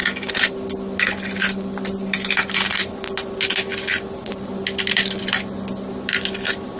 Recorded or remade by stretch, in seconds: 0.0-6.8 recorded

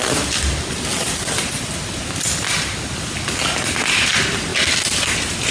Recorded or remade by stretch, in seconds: 0.0-4.5 recorded; 4.5-5.1 remade; 5.1-5.5 recorded

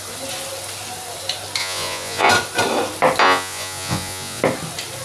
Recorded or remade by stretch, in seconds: 0.0-1.6 recorded; 1.6-2.3 remade; 2.3-3.2 recorded; 3.2-4.4 remade; 4.4-5.0 recorded

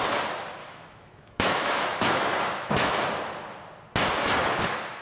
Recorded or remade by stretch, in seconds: 0.0-0.6 recorded; 0.6-3.0 remade; 3.0-5.0 recorded

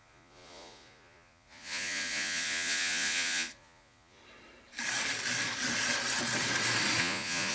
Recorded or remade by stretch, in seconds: 0.0-4.2 remade; 4.2-7.0 recorded; 7.0-7.5 remade

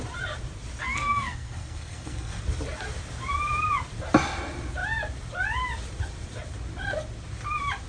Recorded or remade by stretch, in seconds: 0.0-0.8 recorded; 0.8-2.4 remade; 2.4-7.9 recorded

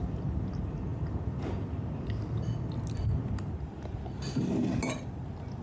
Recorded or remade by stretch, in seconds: 0.0-5.6 recorded